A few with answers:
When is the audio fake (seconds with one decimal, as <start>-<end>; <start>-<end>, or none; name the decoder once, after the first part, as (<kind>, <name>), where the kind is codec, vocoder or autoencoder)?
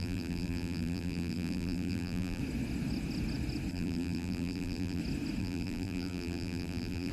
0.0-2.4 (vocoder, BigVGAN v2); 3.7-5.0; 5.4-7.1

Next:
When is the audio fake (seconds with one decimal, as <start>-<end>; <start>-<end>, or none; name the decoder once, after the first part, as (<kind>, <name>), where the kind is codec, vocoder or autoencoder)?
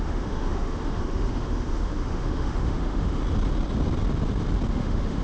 0.0-3.2 (autoencoder, DAC-VAE); 4.7-5.2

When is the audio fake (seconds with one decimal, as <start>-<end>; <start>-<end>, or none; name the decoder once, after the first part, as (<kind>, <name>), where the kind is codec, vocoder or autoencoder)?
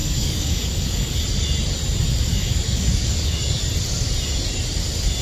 0.0-1.2 (codec, DAC); 2.3-3.6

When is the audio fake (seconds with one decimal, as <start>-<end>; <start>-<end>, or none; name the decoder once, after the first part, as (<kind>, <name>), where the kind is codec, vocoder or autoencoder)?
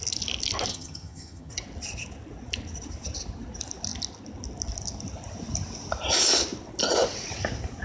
0.7-1.5 (vocoder, HiFi-GAN)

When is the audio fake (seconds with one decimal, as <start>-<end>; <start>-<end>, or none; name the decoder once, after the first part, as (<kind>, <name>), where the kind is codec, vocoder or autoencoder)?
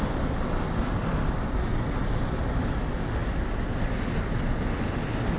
none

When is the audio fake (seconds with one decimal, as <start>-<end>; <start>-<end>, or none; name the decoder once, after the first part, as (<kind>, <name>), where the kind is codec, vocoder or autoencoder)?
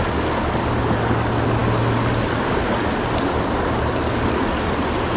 none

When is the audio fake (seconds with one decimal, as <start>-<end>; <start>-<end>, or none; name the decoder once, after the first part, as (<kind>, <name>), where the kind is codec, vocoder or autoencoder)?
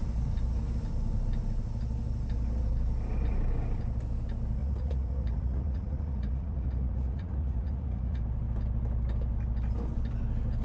4.6-8.2 (vocoder, Vocos)